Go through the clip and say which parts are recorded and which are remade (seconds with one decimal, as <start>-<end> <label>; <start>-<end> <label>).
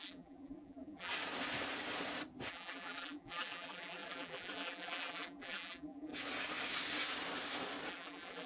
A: 0.0-1.1 remade; 1.1-2.5 recorded; 2.5-6.1 remade; 6.1-7.9 recorded; 7.9-8.5 remade